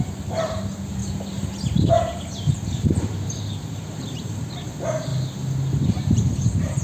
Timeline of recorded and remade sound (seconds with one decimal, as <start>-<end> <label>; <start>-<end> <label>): 0.0-1.0 remade; 1.0-1.9 recorded; 1.9-5.1 remade; 5.1-5.9 recorded; 5.9-6.8 remade

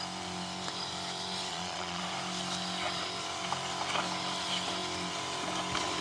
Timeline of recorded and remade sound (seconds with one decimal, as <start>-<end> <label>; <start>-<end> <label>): 0.0-1.5 recorded; 1.5-2.0 remade; 2.0-6.0 recorded

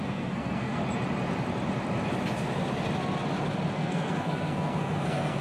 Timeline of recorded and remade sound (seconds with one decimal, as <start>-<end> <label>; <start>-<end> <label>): 0.0-0.8 remade; 0.8-3.7 recorded; 3.7-5.4 remade

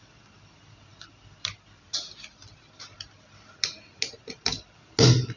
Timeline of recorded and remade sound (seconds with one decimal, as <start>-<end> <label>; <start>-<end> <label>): 0.0-5.4 recorded

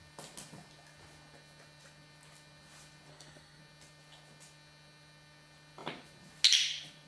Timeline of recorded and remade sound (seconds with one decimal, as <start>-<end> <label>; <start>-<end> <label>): 0.0-3.1 recorded; 3.1-3.6 remade; 3.6-7.1 recorded

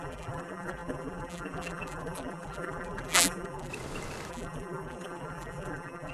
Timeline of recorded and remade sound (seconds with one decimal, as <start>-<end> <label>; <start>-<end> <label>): 0.0-3.7 remade; 3.7-4.3 recorded; 4.3-6.1 remade

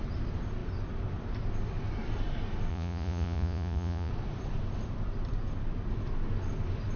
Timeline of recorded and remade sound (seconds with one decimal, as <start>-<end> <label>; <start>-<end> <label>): 0.0-2.7 recorded; 2.7-4.1 remade; 4.1-7.0 recorded

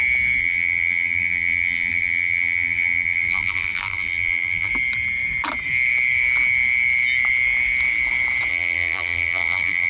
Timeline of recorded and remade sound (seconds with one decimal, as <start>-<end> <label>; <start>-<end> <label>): 0.0-0.4 recorded; 0.4-4.7 remade; 4.7-8.5 recorded; 8.5-9.9 remade